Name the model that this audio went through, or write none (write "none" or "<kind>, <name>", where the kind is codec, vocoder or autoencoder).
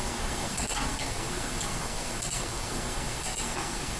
codec, SNAC